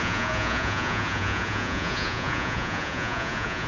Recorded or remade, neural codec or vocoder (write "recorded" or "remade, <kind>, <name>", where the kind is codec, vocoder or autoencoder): remade, vocoder, Vocos